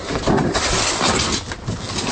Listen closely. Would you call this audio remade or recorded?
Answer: recorded